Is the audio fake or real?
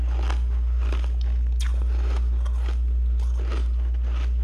real